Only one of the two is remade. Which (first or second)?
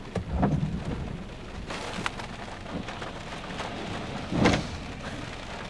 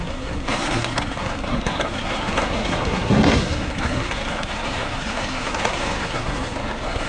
second